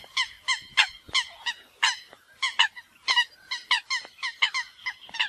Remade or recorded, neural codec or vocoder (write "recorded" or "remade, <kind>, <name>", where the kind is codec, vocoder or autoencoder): recorded